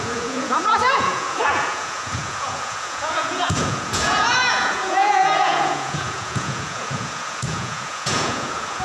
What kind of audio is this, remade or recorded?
remade